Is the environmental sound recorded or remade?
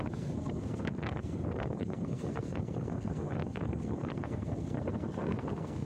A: remade